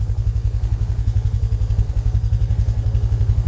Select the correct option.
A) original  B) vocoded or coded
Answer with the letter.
B